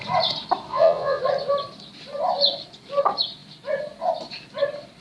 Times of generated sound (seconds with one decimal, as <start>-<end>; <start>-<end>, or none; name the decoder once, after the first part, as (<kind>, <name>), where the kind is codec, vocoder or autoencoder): 0.7-1.2 (vocoder, Vocos)